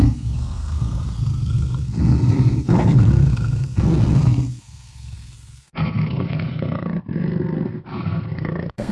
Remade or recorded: remade